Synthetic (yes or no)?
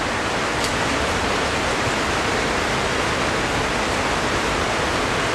no